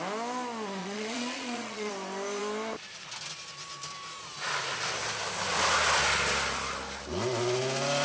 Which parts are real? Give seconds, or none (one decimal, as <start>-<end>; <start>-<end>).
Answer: 0.0-0.8; 1.9-8.0